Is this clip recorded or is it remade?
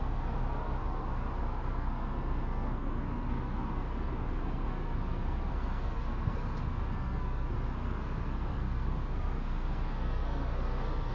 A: remade